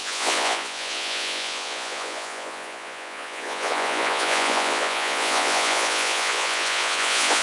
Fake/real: fake